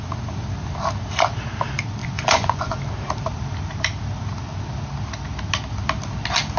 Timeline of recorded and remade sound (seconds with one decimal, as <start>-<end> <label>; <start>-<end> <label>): 0.0-2.0 recorded; 2.0-2.8 remade; 2.8-6.6 recorded

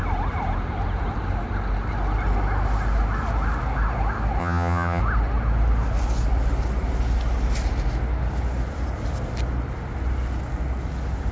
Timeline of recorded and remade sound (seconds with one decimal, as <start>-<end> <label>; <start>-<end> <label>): 0.0-4.4 recorded; 4.4-5.0 remade; 5.0-11.3 recorded